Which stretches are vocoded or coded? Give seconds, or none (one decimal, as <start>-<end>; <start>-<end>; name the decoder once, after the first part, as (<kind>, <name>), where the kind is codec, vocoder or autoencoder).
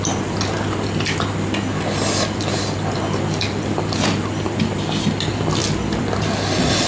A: none